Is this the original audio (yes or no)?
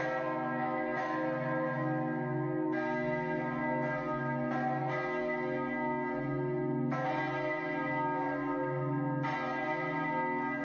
yes